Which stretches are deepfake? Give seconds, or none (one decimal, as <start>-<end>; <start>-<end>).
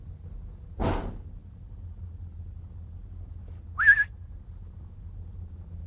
none